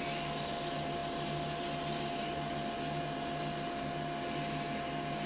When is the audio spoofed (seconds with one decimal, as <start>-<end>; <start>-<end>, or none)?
none